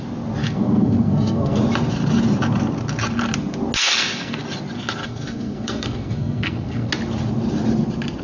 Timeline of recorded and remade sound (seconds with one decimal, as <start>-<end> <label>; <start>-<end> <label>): 0.0-0.4 recorded; 0.4-1.6 remade; 1.6-3.8 recorded; 3.8-4.4 remade; 4.4-5.0 recorded; 5.0-6.9 remade; 6.9-8.2 recorded